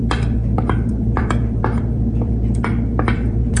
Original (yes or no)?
no